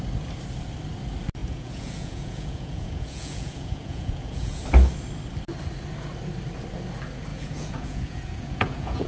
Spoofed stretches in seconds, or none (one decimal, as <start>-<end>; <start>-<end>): 1.4-4.6; 7.3-9.1